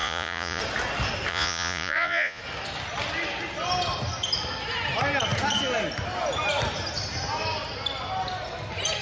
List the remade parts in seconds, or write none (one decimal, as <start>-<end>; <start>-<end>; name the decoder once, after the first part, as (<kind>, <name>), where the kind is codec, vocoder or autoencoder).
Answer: 0.0-0.6 (vocoder, Vocos); 1.3-2.4